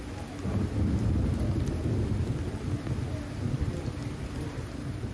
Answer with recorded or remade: recorded